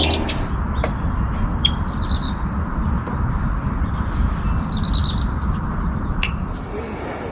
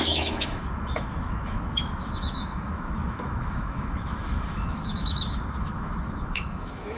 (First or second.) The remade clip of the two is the second